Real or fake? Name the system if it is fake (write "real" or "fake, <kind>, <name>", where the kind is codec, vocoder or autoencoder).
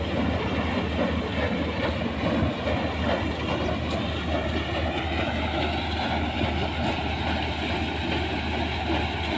real